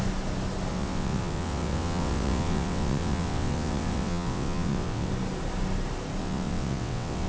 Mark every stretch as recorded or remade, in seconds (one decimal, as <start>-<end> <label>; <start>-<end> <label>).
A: 0.0-0.7 recorded; 0.7-5.1 remade; 5.1-6.2 recorded; 6.2-7.3 remade